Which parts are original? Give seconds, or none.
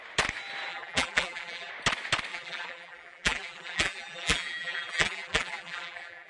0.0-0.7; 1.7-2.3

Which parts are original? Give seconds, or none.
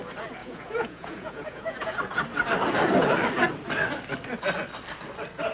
0.0-0.4; 2.0-5.5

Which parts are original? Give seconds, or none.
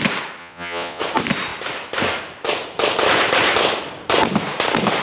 0.0-0.4; 1.0-5.0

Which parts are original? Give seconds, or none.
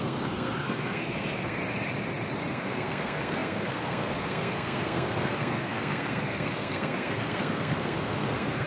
1.6-2.5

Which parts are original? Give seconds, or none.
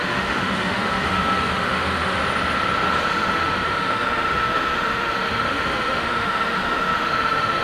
2.2-3.0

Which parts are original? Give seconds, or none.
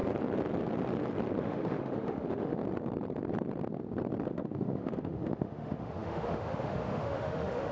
0.0-1.4; 2.6-4.3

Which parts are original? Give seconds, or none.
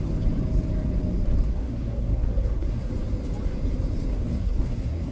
0.0-1.5; 2.9-4.1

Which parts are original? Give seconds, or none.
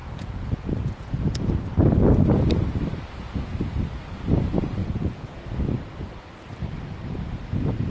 1.5-4.8; 5.4-7.9